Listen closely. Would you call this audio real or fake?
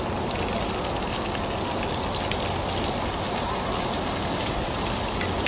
real